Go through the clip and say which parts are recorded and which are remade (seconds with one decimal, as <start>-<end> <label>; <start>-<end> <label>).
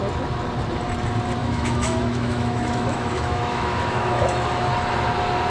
0.0-1.4 recorded; 1.4-4.7 remade; 4.7-5.5 recorded